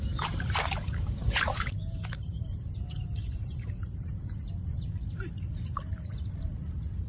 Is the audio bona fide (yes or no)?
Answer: no